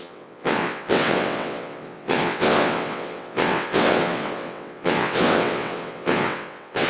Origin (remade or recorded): remade